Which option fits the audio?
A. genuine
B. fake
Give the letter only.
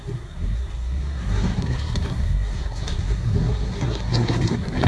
B